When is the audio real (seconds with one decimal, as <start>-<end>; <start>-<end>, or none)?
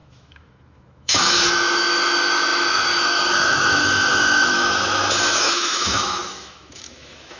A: none